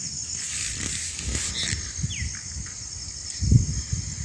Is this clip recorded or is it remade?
recorded